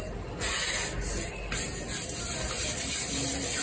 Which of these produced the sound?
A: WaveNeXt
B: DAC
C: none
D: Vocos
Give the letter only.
C